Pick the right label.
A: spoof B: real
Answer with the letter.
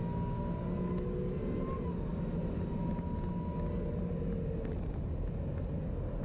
B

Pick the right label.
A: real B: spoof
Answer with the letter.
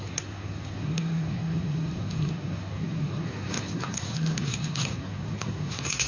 B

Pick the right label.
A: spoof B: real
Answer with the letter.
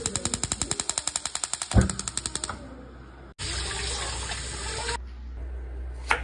B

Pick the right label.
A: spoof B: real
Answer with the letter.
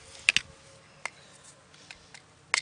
B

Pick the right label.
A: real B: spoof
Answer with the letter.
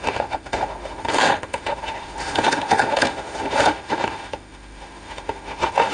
B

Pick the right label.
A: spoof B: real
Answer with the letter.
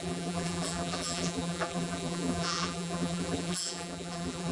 A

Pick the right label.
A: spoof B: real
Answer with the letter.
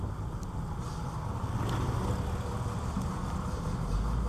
B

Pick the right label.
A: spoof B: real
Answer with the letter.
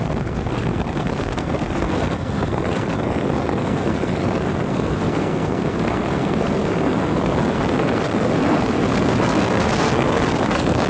A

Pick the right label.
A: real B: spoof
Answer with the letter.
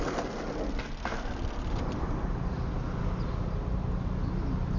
A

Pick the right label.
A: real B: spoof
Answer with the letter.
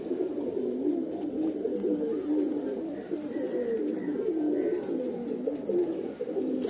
A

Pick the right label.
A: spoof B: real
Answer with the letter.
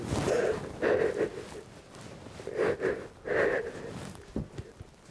B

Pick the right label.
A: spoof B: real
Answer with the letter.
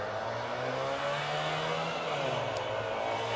B